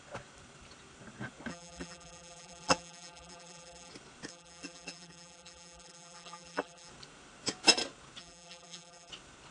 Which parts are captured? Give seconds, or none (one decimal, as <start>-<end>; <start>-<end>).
0.0-1.5; 3.9-4.3; 6.9-8.2; 9.1-9.5

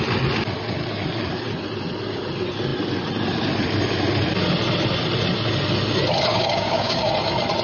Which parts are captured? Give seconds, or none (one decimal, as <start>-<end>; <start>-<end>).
0.0-6.3; 7.1-7.6

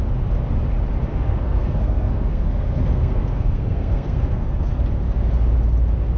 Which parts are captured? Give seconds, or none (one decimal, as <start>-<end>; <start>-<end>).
0.0-1.1; 4.8-6.2

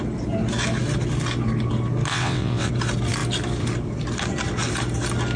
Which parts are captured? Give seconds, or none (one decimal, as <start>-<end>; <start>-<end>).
0.0-2.1; 2.7-5.4

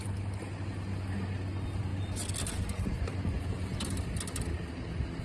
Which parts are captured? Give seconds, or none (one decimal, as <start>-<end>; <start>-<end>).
0.0-5.2